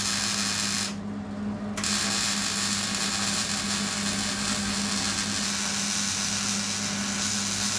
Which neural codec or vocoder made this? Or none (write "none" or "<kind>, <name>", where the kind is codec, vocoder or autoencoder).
none